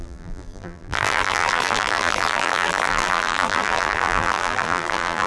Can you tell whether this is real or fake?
fake